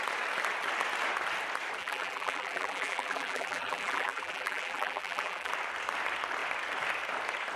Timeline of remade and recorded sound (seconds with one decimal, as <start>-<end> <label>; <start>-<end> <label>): 0.0-1.8 recorded; 1.8-5.5 remade; 5.5-7.6 recorded